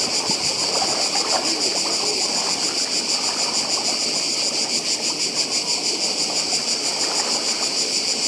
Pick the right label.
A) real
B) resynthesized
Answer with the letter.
A